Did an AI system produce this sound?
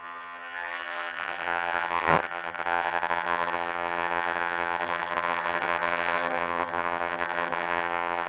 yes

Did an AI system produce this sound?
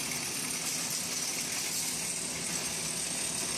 no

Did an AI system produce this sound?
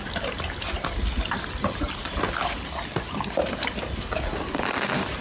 no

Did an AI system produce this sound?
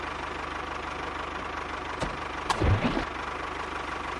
no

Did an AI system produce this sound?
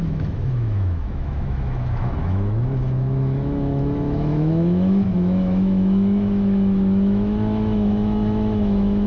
yes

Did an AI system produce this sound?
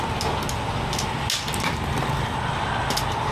no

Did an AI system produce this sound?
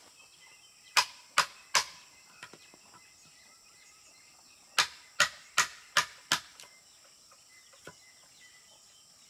no